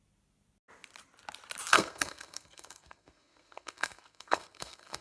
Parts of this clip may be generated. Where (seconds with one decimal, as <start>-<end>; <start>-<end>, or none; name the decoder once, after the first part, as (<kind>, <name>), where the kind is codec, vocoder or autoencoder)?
1.7-5.0 (codec, SNAC)